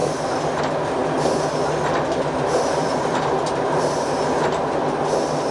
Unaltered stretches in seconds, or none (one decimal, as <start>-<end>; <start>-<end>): 0.0-5.5